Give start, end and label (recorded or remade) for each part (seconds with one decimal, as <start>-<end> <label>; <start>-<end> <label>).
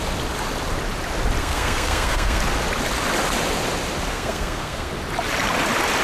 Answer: 0.0-1.4 recorded; 1.4-2.4 remade; 2.4-4.1 recorded; 4.1-4.9 remade; 4.9-6.0 recorded